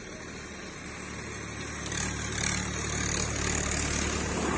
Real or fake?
real